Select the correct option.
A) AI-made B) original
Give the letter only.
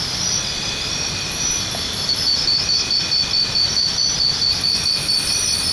B